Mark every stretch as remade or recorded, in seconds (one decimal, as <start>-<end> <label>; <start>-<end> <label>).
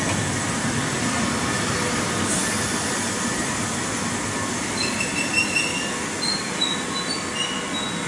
0.0-8.1 recorded